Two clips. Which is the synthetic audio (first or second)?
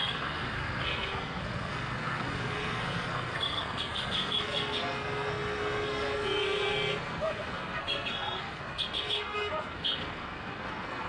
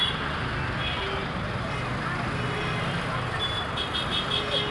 first